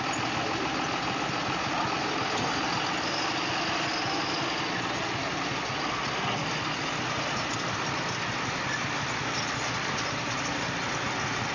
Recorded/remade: recorded